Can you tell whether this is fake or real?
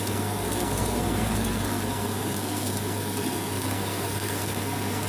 fake